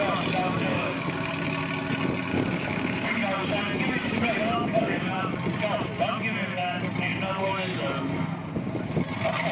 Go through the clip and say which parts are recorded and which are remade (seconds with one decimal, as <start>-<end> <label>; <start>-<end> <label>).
0.0-0.7 recorded; 0.7-1.3 remade; 1.3-2.3 recorded; 2.3-3.1 remade; 3.1-4.0 recorded; 4.0-5.1 remade; 5.1-9.5 recorded